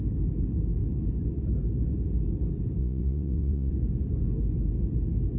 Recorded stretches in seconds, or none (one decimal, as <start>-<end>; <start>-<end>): 0.0-2.8; 3.7-5.4